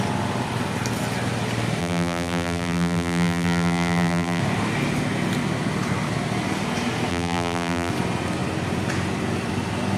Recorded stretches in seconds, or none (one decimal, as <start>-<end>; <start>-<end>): 0.0-1.8; 4.4-7.1; 7.9-10.0